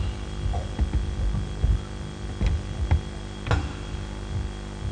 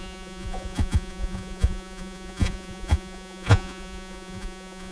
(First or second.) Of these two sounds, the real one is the first